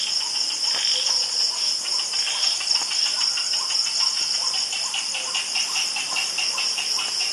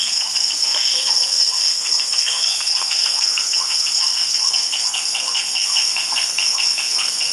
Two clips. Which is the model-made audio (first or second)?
second